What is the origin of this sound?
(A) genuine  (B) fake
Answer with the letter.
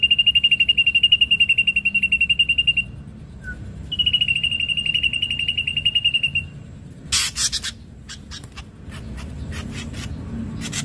A